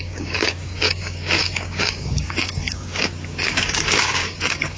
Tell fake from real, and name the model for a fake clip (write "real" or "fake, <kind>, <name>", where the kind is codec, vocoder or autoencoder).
fake, codec, DAC